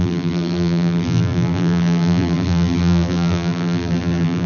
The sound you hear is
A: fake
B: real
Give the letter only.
A